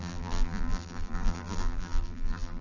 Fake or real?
fake